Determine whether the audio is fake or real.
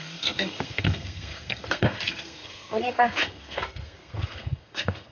fake